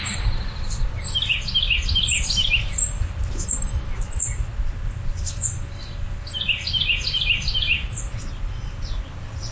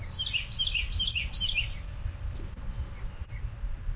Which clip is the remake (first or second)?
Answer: first